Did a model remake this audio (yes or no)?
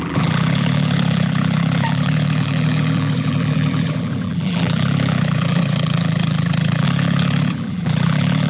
yes